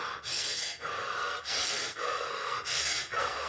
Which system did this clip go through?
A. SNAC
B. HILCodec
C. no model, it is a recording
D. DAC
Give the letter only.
A